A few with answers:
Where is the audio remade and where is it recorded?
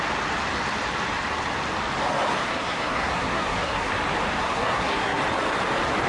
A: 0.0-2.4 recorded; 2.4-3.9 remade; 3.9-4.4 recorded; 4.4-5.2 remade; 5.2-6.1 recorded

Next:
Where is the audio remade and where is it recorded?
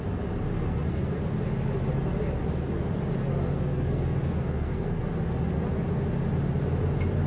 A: 0.0-0.5 recorded; 0.5-1.2 remade; 1.2-3.4 recorded; 3.4-5.0 remade; 5.0-7.3 recorded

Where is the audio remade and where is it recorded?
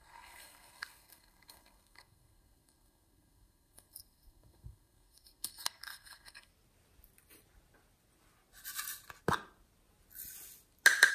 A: 0.0-6.5 remade; 6.5-11.1 recorded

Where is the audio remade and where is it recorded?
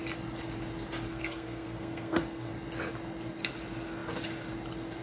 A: 0.0-1.1 recorded; 1.1-2.5 remade; 2.5-5.0 recorded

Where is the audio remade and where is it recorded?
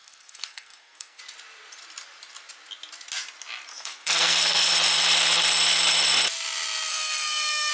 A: 0.0-1.2 remade; 1.2-3.7 recorded; 3.7-4.7 remade; 4.7-6.9 recorded; 6.9-7.7 remade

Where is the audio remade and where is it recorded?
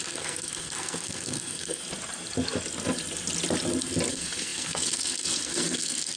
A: 0.0-1.8 remade; 1.8-4.1 recorded; 4.1-6.2 remade